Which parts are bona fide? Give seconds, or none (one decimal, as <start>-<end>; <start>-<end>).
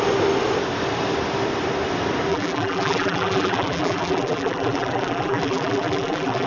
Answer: 0.0-2.3